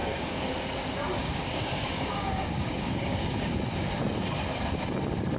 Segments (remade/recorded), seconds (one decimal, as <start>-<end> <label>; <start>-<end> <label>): 0.0-0.5 remade; 0.5-1.2 recorded; 1.2-3.5 remade; 3.5-5.4 recorded